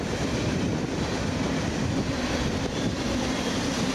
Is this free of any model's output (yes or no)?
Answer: no